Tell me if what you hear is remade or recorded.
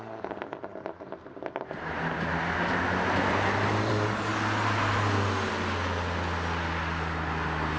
recorded